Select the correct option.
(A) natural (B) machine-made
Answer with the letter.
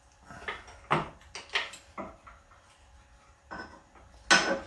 A